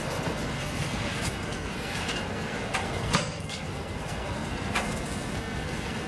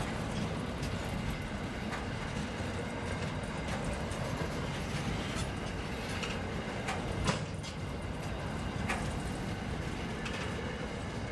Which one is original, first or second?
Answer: second